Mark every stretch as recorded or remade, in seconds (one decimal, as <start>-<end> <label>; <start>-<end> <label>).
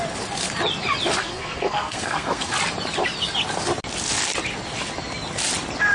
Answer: 0.0-1.2 recorded; 1.2-2.5 remade; 2.5-5.9 recorded